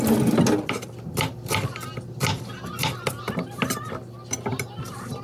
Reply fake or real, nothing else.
real